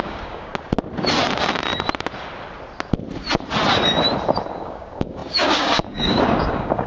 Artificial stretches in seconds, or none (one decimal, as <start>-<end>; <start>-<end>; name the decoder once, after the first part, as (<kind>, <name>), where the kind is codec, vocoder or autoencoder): 0.0-0.5 (codec, DAC); 4.6-6.9